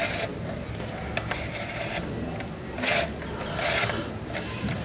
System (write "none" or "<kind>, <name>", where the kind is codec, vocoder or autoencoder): none